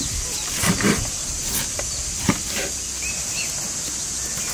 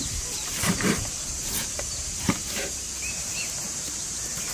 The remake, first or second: second